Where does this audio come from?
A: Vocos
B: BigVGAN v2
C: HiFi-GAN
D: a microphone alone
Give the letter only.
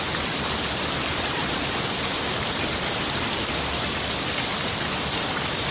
B